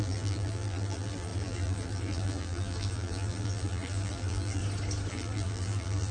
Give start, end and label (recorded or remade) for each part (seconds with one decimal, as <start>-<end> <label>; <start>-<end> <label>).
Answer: 0.0-4.6 remade; 4.6-5.1 recorded; 5.1-6.1 remade